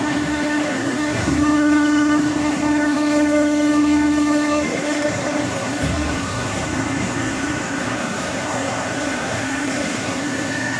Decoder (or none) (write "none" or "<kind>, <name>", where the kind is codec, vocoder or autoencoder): codec, SNAC